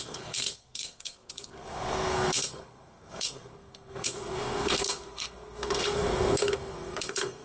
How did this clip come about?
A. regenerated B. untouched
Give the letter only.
A